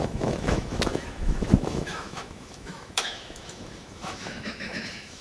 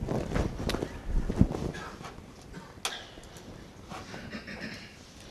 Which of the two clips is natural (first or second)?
second